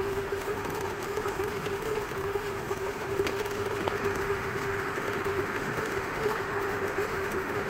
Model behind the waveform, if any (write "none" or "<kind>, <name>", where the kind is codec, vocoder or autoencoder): autoencoder, DAC-VAE